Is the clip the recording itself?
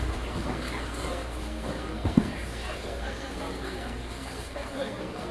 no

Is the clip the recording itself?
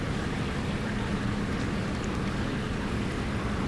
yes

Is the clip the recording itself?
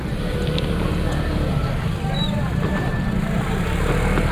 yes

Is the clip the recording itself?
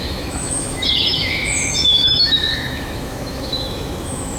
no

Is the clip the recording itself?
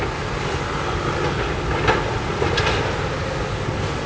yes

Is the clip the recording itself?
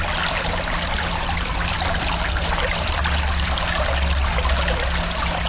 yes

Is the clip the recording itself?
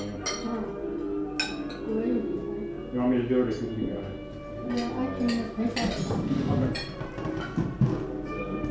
yes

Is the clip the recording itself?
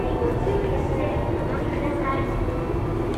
yes